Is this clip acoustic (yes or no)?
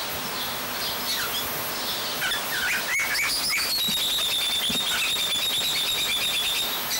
yes